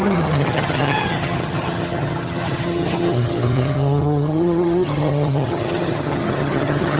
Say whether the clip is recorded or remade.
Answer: remade